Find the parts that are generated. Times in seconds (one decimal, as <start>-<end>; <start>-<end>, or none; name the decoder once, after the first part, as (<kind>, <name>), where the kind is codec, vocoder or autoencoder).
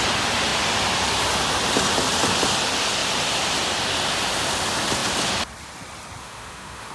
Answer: 6.2-6.9 (autoencoder, DAC-VAE)